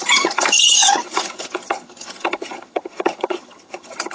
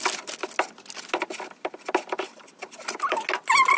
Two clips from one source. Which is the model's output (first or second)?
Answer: first